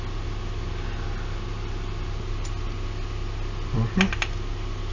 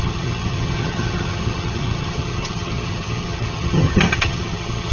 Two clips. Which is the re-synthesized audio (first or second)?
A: second